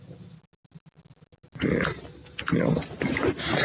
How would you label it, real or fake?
real